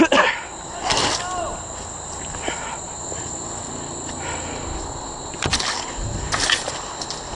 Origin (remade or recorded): recorded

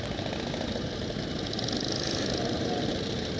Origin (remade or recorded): recorded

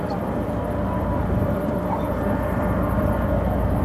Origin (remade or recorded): recorded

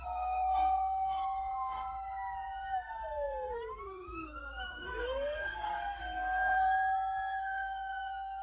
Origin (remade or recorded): remade